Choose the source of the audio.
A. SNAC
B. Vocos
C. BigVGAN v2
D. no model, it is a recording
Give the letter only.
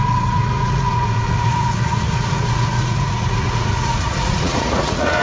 B